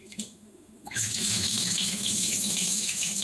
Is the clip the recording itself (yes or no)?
no